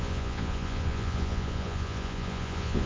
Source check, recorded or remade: remade